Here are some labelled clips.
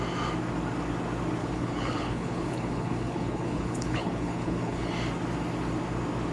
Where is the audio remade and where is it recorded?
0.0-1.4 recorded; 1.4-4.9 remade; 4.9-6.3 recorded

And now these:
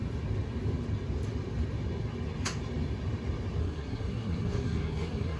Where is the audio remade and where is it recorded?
0.0-3.6 recorded; 3.6-5.4 remade